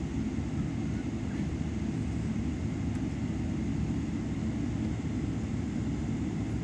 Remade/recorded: recorded